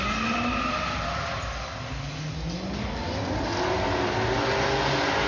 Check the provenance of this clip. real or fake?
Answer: real